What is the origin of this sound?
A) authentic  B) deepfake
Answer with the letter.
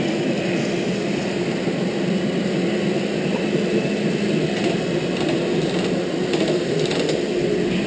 A